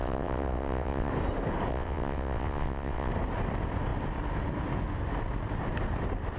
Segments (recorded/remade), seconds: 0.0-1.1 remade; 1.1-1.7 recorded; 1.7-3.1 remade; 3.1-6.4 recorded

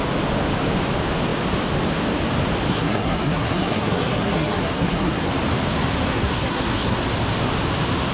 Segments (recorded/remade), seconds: 0.0-2.7 recorded; 2.7-5.3 remade; 5.3-6.1 recorded; 6.1-7.0 remade; 7.0-8.1 recorded

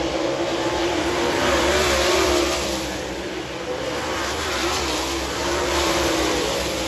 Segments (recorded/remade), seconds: 0.0-0.8 recorded; 0.8-1.4 remade; 1.4-5.4 recorded; 5.4-6.1 remade; 6.1-6.9 recorded

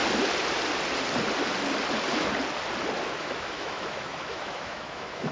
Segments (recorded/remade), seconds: 0.0-3.2 recorded; 3.2-5.3 remade